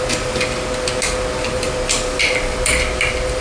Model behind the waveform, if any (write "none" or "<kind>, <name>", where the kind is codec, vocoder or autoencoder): none